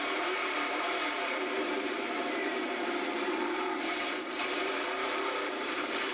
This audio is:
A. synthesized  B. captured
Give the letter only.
A